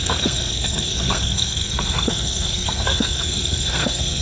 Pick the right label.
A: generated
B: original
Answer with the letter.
A